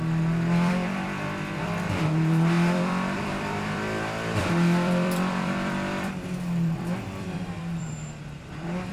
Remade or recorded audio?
remade